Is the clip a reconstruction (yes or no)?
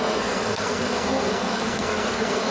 yes